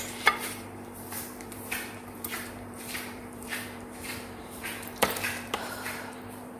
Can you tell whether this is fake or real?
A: fake